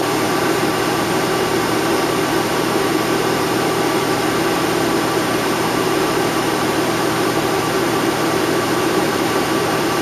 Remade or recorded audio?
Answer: remade